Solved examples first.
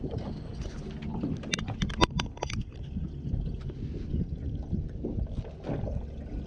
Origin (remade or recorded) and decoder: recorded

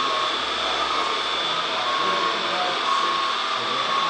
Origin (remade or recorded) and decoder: recorded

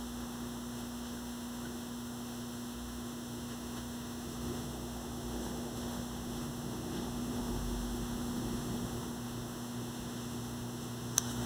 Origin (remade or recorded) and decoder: remade, autoencoder, DAC-VAE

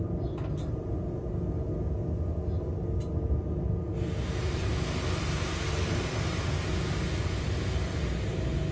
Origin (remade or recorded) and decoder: recorded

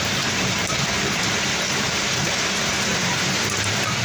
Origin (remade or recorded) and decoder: remade, vocoder, BigVGAN v2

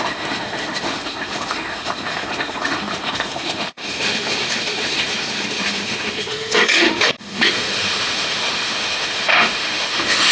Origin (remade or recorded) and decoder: remade, autoencoder, DAC-VAE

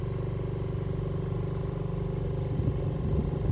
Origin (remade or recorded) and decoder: recorded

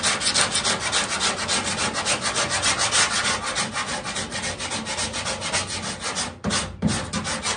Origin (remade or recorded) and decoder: recorded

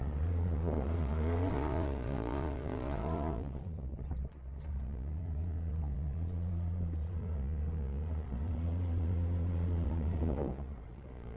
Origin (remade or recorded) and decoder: remade, vocoder, Vocos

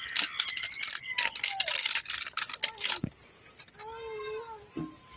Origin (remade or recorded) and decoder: recorded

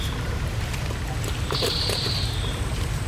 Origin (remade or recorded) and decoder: recorded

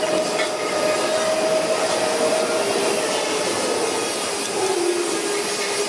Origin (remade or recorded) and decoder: recorded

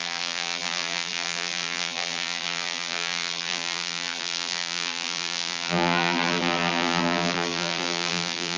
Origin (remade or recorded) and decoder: remade, vocoder, BigVGAN v2